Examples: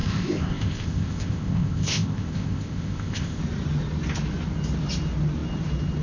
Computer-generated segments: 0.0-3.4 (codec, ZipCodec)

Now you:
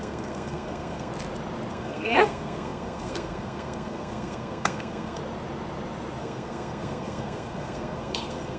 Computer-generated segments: 0.0-1.1 (codec, SNAC); 1.7-5.2; 6.2-8.6

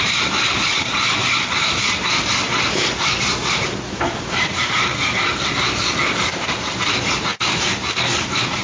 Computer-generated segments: 0.0-8.6 (vocoder, BigVGAN v2)

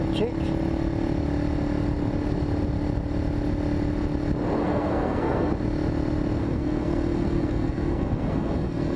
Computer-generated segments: 4.6-5.5 (codec, SNAC); 6.4-9.0

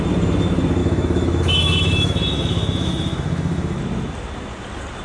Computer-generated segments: 0.8-3.8 (autoencoder, DAC-VAE)

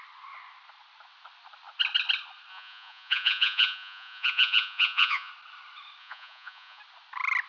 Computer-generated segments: 2.5-5.3 (vocoder, Vocos); 6.0-6.8

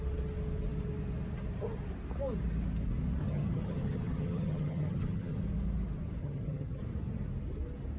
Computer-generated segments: 3.2-5.4 (vocoder, HiFi-GAN); 6.2-6.8